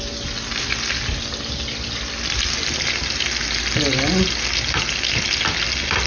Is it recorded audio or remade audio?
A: recorded